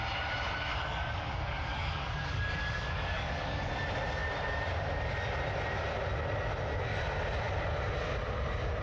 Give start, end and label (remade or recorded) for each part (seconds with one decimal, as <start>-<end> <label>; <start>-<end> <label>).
0.0-0.7 recorded; 0.7-3.7 remade; 3.7-8.8 recorded